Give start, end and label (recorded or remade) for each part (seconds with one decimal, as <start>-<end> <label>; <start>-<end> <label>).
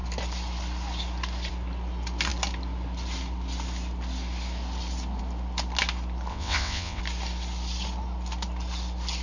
0.0-6.3 recorded; 6.3-7.0 remade; 7.0-9.2 recorded